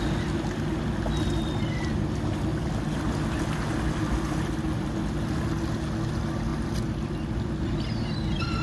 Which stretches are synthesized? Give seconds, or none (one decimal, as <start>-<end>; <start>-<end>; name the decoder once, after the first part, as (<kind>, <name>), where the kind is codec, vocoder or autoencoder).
none